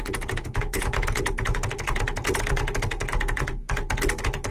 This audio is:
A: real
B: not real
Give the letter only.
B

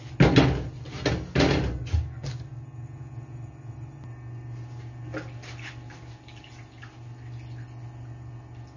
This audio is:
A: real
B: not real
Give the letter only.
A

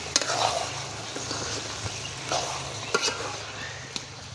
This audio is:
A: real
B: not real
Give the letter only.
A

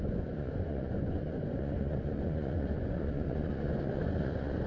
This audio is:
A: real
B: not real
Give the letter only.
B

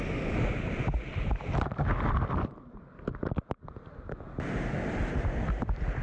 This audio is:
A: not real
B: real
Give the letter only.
B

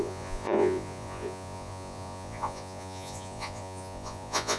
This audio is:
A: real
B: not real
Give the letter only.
B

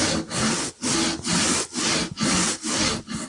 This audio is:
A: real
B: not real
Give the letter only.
A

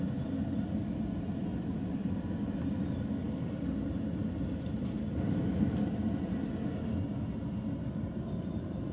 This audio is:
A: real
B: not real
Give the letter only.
A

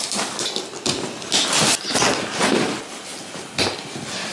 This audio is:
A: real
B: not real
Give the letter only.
A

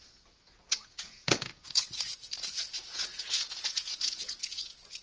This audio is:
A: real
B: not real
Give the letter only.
B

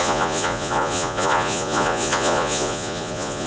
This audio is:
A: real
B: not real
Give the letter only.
B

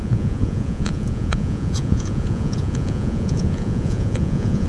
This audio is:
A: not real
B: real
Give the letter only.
A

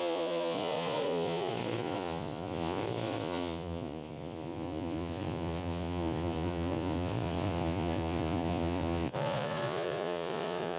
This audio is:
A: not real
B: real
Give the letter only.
A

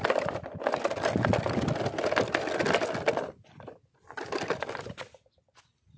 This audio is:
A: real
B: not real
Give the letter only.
A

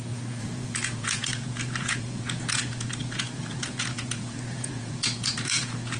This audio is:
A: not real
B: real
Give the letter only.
A